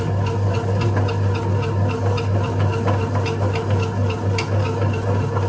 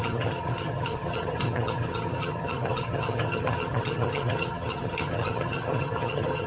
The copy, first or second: second